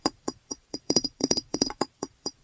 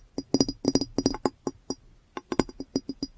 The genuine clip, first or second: second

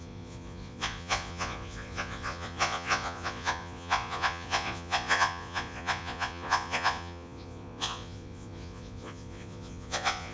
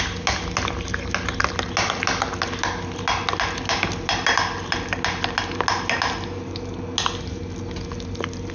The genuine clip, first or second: second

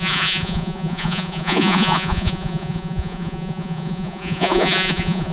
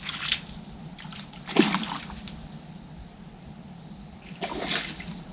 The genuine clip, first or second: second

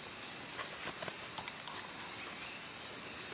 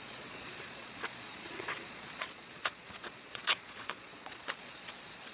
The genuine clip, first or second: first